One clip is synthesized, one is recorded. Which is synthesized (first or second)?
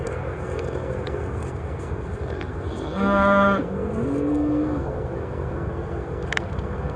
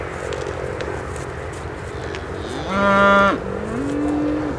first